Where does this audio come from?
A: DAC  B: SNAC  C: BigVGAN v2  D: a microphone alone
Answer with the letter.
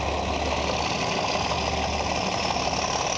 D